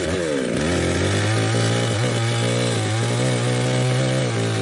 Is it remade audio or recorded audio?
recorded